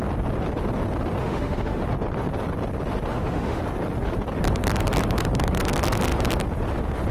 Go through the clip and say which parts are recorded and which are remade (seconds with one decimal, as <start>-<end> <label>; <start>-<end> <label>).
0.0-1.2 recorded; 1.2-1.8 remade; 1.8-3.1 recorded; 3.1-3.6 remade; 3.6-7.1 recorded